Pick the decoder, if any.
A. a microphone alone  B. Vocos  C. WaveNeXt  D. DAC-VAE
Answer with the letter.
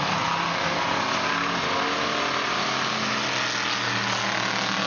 A